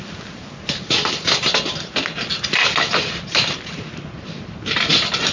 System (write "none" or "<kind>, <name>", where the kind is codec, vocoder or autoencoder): none